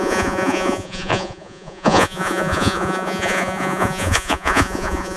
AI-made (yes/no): yes